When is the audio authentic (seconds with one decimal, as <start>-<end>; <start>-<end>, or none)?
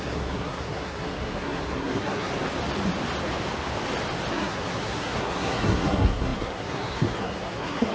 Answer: 2.3-4.3